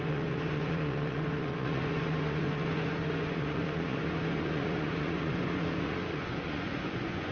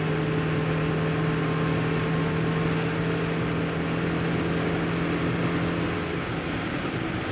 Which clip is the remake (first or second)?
first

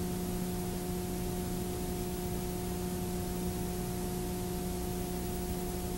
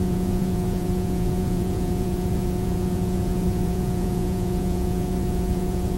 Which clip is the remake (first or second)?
second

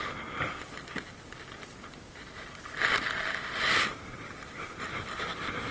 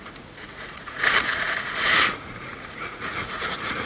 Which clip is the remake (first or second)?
second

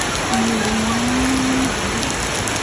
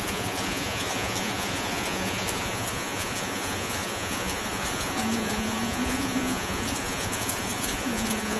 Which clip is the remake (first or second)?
second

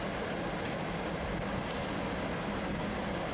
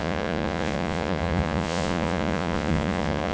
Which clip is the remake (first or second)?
second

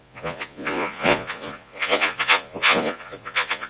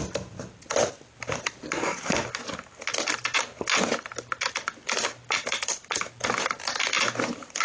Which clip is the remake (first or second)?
first